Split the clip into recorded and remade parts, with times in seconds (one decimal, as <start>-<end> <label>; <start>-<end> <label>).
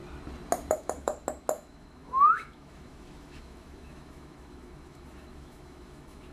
0.0-0.7 recorded; 0.7-1.1 remade; 1.1-1.6 recorded; 1.6-6.3 remade